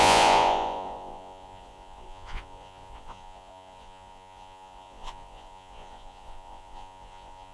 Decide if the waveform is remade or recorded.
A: remade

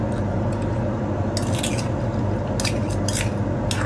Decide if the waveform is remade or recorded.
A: recorded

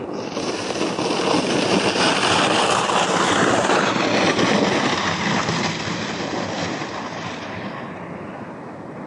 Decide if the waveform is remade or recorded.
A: recorded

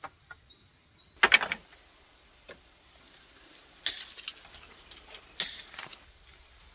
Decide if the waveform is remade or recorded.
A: recorded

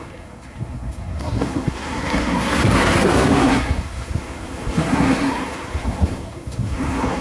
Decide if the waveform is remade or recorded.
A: remade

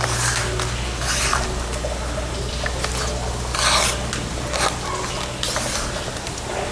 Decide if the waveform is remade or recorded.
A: recorded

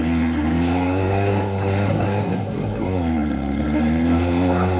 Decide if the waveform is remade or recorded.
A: remade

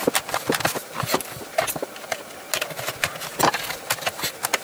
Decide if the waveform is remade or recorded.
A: recorded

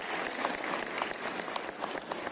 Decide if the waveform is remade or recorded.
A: recorded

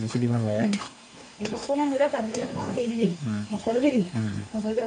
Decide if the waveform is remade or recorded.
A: remade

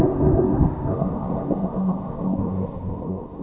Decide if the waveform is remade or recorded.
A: remade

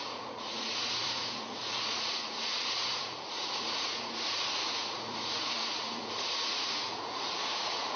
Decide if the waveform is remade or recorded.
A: remade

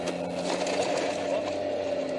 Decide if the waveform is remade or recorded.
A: recorded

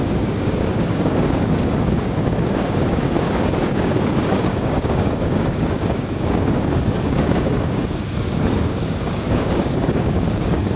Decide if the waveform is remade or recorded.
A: remade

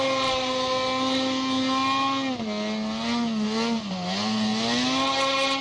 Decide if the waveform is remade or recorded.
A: recorded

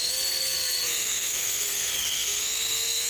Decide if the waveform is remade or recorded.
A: remade